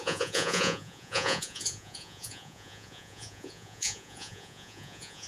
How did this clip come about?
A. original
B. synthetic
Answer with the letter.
B